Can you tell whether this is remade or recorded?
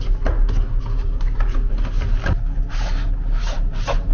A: recorded